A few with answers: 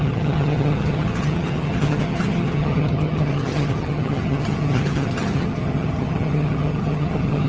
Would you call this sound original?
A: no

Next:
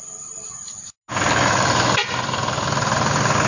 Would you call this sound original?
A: yes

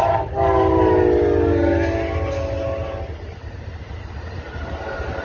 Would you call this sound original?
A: yes